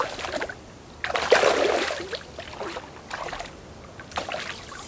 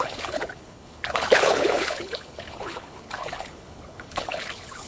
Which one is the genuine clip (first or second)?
first